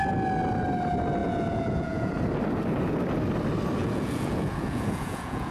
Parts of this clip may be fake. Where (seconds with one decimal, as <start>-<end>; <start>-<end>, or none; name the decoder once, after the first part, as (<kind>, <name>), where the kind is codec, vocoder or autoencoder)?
1.2-2.1 (vocoder, Vocos); 3.8-5.5